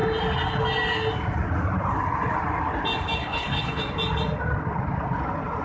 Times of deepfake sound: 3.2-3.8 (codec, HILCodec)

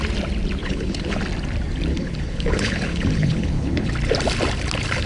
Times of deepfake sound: 0.6-1.2 (codec, HILCodec); 1.9-3.9

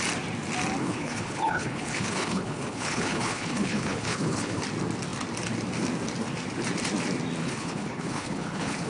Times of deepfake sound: 0.8-4.6 (codec, HILCodec); 7.4-8.9

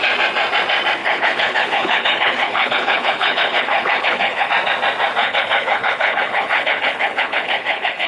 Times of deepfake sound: 1.0-4.5 (codec, HILCodec); 5.2-8.1

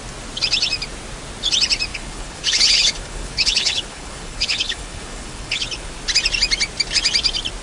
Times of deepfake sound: 1.9-5.9 (codec, HILCodec)

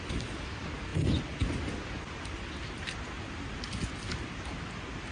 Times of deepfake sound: none

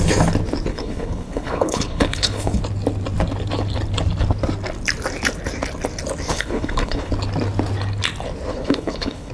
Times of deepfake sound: 0.7-2.6 (codec, HILCodec); 6.3-7.1; 8.5-9.3